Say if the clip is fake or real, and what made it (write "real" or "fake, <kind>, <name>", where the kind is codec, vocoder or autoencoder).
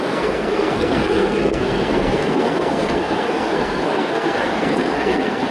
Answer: fake, codec, SNAC